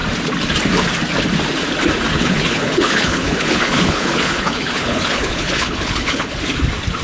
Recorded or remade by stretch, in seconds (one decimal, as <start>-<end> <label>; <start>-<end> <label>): 0.0-2.1 recorded; 2.1-6.3 remade; 6.3-7.0 recorded